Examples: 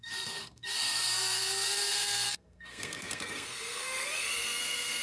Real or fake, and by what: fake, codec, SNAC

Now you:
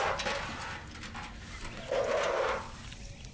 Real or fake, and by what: real